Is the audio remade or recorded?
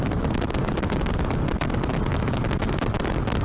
recorded